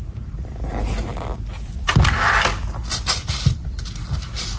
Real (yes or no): yes